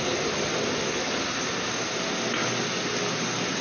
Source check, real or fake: real